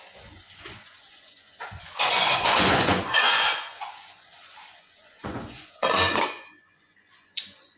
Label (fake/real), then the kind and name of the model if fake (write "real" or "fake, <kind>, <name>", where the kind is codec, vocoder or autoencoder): fake, vocoder, Vocos